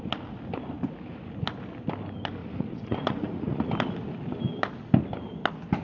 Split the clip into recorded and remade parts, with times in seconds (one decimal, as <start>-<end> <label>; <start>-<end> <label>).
0.0-2.4 recorded; 2.4-3.7 remade; 3.7-5.8 recorded